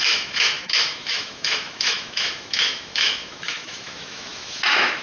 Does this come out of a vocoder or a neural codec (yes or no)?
yes